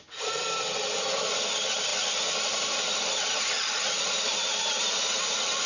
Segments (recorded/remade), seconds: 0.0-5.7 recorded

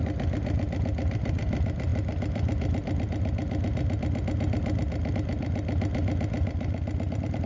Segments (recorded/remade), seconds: 0.0-7.5 recorded

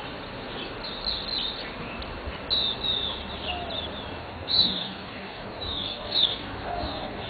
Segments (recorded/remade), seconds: 0.0-4.2 recorded; 4.2-7.3 remade

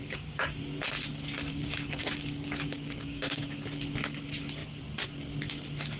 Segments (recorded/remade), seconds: 0.0-0.6 remade; 0.6-1.5 recorded; 1.5-3.4 remade; 3.4-6.0 recorded

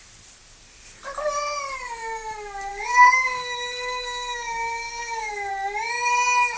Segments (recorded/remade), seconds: 0.0-2.7 recorded; 2.7-5.5 remade; 5.5-6.6 recorded

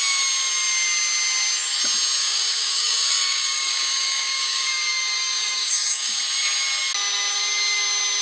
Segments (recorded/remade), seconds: 0.0-2.2 recorded; 2.2-6.2 remade; 6.2-8.2 recorded

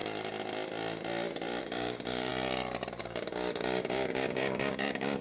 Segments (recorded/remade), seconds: 0.0-1.6 recorded; 1.6-2.3 remade; 2.3-3.0 recorded; 3.0-5.2 remade

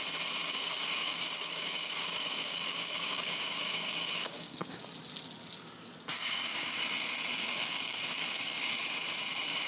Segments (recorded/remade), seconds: 0.0-0.4 recorded; 0.4-4.8 remade; 4.8-6.1 recorded; 6.1-6.8 remade; 6.8-7.4 recorded; 7.4-8.7 remade; 8.7-9.7 recorded